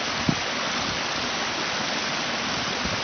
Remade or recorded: recorded